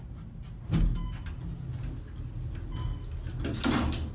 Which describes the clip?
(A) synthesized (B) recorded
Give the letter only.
B